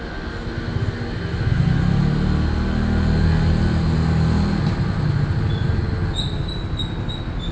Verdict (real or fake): real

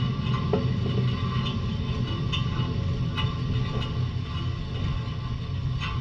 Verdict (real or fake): real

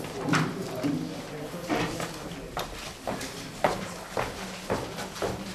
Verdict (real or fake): real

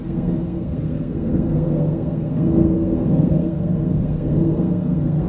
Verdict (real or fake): fake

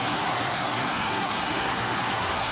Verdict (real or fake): fake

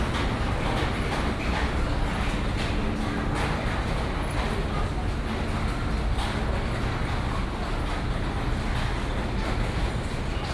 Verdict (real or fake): real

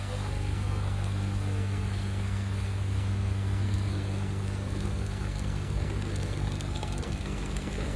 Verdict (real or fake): fake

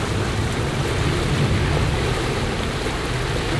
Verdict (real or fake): real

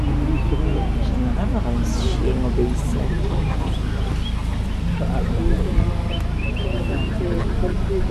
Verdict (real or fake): real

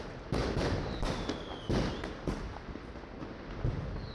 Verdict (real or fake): real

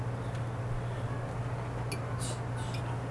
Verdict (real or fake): real